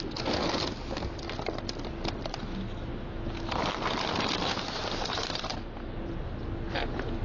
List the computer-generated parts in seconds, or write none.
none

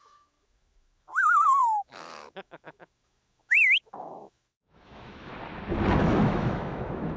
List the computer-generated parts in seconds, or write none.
0.0-5.3 (autoencoder, DAC-VAE); 6.0-7.2